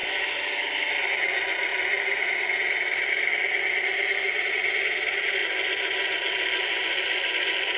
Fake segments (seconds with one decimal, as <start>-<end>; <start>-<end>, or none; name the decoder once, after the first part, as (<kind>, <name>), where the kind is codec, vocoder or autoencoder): 0.0-0.9 (codec, DAC)